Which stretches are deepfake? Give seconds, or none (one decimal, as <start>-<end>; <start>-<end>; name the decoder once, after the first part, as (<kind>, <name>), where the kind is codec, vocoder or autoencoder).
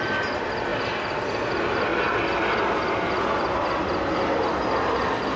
none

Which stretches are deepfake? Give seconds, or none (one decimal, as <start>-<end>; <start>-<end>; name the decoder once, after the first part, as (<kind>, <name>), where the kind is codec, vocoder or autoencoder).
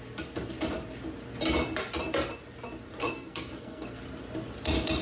3.0-4.0 (codec, SNAC)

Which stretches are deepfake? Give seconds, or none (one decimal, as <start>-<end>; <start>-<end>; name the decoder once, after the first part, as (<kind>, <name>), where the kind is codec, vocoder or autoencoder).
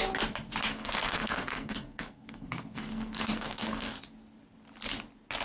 0.7-3.9 (codec, SNAC)